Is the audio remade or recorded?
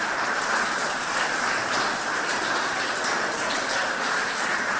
recorded